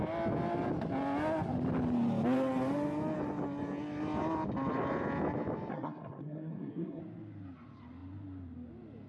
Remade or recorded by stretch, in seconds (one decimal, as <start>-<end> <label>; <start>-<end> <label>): 0.0-5.7 recorded; 5.7-7.0 remade; 7.0-9.1 recorded